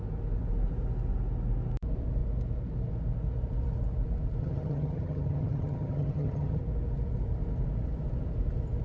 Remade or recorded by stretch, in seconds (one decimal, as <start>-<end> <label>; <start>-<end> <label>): 0.0-4.4 recorded; 4.4-6.6 remade; 6.6-8.8 recorded